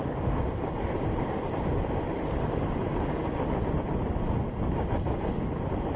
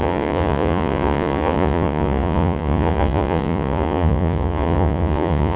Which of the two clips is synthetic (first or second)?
second